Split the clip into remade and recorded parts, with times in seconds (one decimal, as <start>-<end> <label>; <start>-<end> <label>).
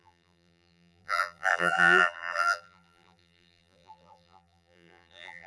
0.0-5.5 remade